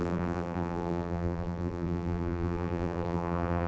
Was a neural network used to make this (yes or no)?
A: yes